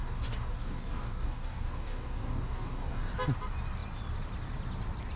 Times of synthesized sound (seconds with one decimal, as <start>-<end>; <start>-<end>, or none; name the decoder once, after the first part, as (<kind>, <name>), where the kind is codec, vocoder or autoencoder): 0.0-3.1 (codec, DAC)

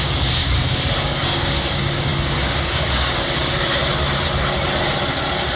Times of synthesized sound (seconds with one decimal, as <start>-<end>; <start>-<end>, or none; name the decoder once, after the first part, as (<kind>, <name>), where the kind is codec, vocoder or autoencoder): 0.0-3.8 (codec, DAC)

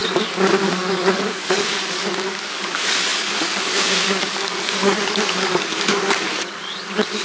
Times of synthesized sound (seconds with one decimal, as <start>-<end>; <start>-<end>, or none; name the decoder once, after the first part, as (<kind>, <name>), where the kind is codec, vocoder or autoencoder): 0.0-7.2 (codec, DAC)

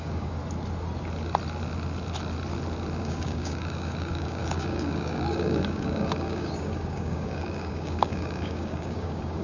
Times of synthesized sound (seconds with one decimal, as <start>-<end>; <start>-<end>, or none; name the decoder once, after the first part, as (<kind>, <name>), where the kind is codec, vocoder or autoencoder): 0.0-0.4 (codec, DAC); 3.0-9.4